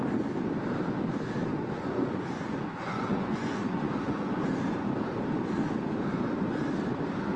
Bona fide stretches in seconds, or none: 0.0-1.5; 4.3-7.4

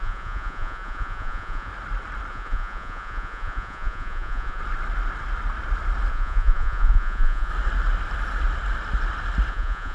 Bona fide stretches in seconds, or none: 1.7-2.3; 4.6-6.1; 7.5-9.5

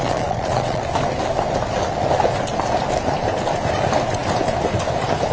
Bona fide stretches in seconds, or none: 0.8-5.3

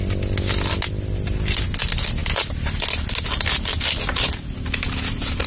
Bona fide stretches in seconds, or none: 0.0-5.5